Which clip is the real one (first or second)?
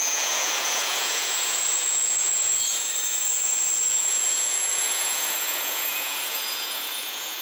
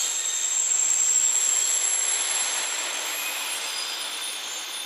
second